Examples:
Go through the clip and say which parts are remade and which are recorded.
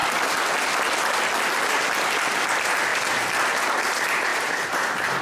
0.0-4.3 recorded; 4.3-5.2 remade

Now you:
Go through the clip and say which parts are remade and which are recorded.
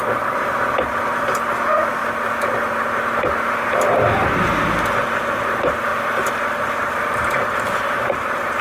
0.0-8.6 recorded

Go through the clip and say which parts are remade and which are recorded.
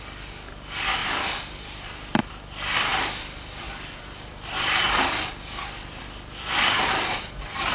0.0-4.8 remade; 4.8-6.0 recorded; 6.0-7.7 remade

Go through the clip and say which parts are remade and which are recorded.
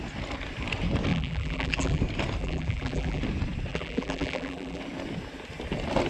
0.0-1.1 recorded; 1.1-2.0 remade; 2.0-2.4 recorded; 2.4-3.2 remade; 3.2-3.7 recorded; 3.7-4.8 remade; 4.8-6.1 recorded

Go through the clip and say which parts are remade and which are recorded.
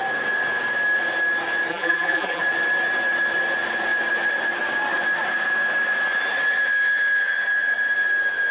0.0-1.7 recorded; 1.7-2.4 remade; 2.4-8.5 recorded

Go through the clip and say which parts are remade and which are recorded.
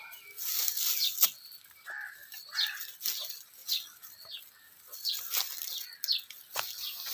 0.0-2.2 recorded; 2.2-2.8 remade; 2.8-7.1 recorded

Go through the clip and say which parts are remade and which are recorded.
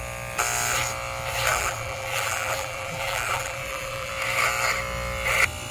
0.0-1.5 recorded; 1.5-4.1 remade; 4.1-5.7 recorded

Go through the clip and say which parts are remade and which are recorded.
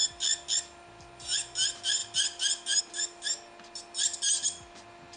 0.0-5.2 recorded